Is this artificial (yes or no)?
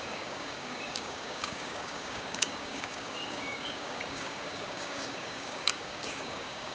yes